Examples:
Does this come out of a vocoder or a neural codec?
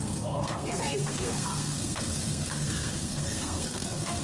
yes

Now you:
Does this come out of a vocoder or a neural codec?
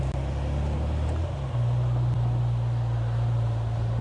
no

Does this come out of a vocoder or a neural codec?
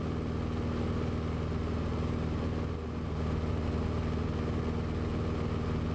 no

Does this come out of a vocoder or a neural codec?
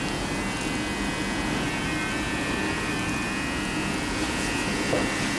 no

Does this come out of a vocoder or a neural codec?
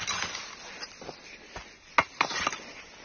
no